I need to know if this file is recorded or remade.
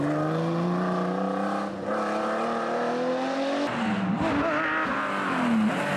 recorded